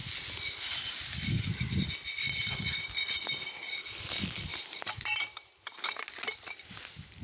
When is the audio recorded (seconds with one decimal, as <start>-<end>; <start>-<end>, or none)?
0.0-4.5; 5.5-7.2